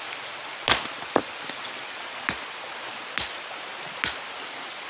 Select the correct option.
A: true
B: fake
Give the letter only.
A